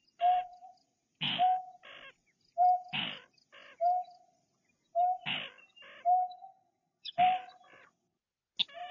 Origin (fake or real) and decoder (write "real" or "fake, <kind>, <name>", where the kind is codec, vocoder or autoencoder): real